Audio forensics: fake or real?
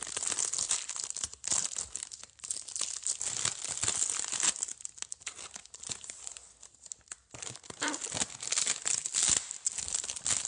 real